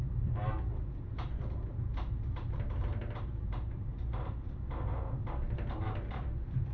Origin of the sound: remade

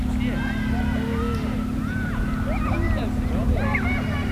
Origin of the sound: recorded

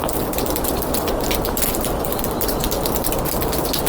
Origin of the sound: recorded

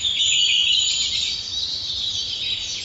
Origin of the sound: remade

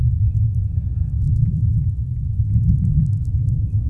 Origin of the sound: recorded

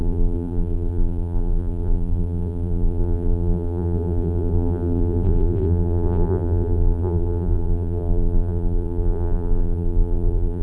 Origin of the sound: remade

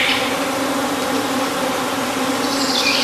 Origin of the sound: recorded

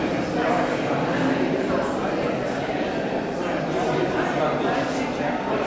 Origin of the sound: remade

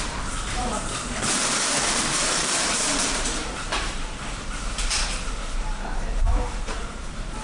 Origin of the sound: remade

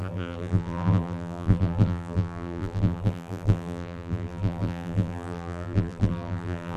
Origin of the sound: remade